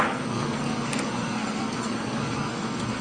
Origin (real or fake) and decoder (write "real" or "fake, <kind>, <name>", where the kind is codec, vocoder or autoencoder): fake, codec, SNAC